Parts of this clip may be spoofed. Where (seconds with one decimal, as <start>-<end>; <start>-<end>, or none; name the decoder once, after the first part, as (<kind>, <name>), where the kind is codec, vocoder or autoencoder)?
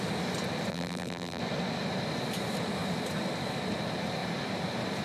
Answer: 0.7-1.4 (vocoder, BigVGAN v2)